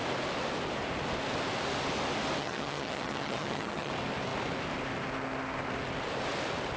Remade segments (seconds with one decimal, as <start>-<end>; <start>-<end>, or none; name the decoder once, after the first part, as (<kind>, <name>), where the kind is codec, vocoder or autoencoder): 2.4-3.9 (vocoder, HiFi-GAN)